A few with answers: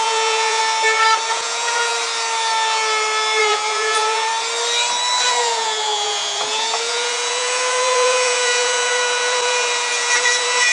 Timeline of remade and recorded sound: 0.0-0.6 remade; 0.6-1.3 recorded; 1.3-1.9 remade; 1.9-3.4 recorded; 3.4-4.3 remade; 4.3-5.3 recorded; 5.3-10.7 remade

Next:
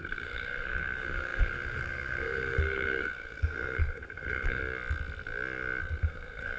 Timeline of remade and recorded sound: 0.0-4.6 remade; 4.6-5.8 recorded; 5.8-6.6 remade

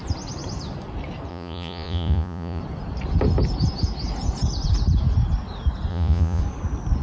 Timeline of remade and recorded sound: 0.0-1.3 recorded; 1.3-2.6 remade; 2.6-5.9 recorded; 5.9-6.4 remade; 6.4-7.0 recorded

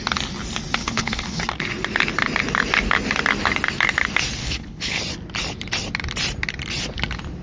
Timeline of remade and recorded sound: 0.0-0.8 recorded; 0.8-1.4 remade; 1.4-4.4 recorded; 4.4-5.0 remade; 5.0-7.4 recorded

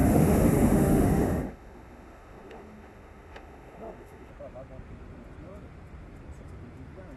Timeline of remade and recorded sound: 0.0-4.3 remade; 4.3-7.2 recorded

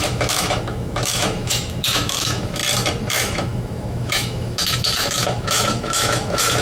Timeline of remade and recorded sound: 0.0-2.6 remade; 2.6-3.1 recorded; 3.1-6.6 remade